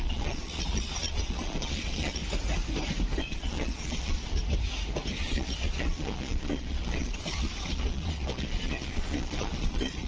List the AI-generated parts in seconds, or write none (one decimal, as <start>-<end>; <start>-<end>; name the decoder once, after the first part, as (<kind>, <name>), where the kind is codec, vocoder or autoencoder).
0.0-2.2 (vocoder, Vocos); 3.2-4.4; 5.2-10.1